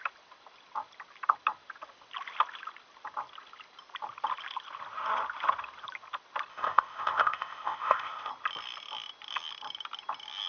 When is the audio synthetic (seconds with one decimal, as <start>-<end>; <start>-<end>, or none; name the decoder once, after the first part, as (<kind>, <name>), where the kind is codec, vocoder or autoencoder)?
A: 6.5-8.3 (codec, ZipCodec)